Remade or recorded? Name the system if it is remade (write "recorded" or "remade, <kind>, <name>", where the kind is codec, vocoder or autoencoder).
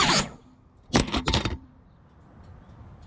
recorded